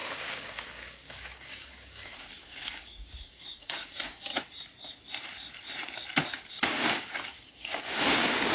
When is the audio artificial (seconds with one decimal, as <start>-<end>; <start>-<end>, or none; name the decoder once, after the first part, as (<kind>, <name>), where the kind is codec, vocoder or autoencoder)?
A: 0.0-4.3 (codec, DAC); 6.5-8.5